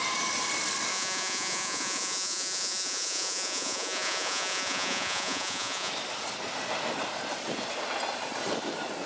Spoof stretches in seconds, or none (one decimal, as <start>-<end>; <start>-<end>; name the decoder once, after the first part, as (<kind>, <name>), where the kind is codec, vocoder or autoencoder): 0.9-5.9 (vocoder, Vocos)